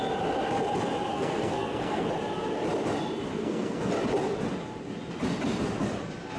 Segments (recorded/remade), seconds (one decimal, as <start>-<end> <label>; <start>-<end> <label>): 0.0-1.1 recorded; 1.1-2.1 remade; 2.1-3.3 recorded; 3.3-3.9 remade; 3.9-6.4 recorded